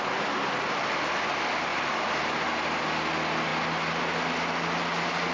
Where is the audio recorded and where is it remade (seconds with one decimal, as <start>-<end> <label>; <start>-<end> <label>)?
0.0-5.3 recorded